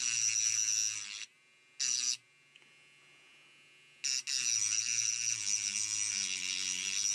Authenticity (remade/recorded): recorded